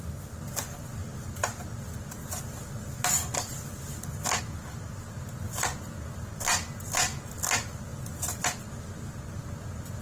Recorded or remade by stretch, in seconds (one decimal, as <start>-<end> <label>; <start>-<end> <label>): 0.0-7.9 recorded; 7.9-8.6 remade; 8.6-10.0 recorded